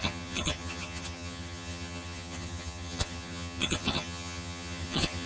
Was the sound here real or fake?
fake